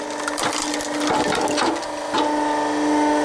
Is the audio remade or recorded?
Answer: recorded